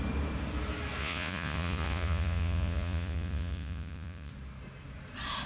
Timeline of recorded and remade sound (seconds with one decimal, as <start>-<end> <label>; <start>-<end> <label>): 0.0-1.0 recorded; 1.0-4.3 remade; 4.3-5.5 recorded